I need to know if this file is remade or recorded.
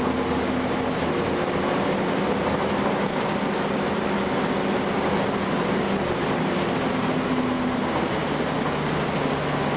recorded